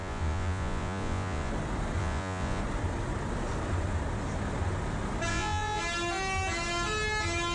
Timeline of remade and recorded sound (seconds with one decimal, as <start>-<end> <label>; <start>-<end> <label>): 0.0-1.5 remade; 1.5-2.0 recorded; 2.0-2.6 remade; 2.6-5.3 recorded; 5.3-5.8 remade; 5.8-7.5 recorded